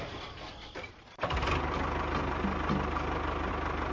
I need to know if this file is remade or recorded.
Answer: recorded